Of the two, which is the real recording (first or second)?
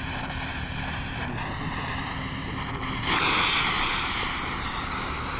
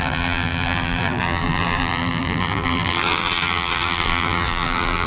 first